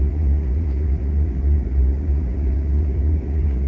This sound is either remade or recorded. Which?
remade